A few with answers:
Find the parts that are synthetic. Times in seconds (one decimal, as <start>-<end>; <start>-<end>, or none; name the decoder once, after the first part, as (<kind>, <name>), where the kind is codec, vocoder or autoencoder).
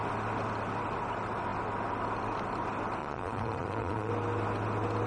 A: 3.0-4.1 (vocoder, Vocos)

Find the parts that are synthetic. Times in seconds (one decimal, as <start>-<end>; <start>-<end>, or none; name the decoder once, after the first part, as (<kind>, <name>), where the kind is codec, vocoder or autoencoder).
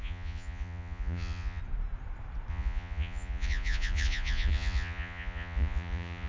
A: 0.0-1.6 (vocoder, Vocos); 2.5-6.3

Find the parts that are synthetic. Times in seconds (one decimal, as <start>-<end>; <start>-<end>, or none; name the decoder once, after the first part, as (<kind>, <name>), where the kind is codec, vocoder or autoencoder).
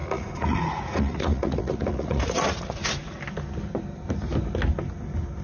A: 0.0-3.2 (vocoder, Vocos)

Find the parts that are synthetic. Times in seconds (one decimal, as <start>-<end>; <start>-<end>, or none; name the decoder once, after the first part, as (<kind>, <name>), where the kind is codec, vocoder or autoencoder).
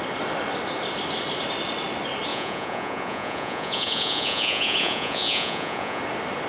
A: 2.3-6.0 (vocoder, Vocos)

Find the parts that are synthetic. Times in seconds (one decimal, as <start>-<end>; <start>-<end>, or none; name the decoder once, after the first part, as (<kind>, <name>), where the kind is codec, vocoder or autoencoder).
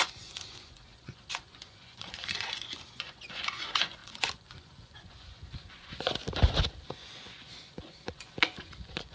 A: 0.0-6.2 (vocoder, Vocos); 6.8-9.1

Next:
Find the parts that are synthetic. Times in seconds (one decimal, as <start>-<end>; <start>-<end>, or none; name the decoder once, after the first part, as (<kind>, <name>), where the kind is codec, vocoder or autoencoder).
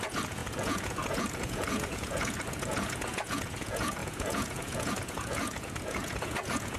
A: 0.0-6.8 (vocoder, Vocos)